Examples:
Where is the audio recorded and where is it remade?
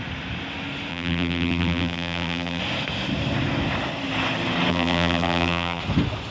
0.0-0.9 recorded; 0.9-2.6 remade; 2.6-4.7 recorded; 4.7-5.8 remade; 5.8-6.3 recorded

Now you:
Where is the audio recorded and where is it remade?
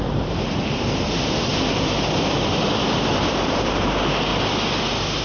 0.0-1.5 remade; 1.5-3.1 recorded; 3.1-4.3 remade; 4.3-5.2 recorded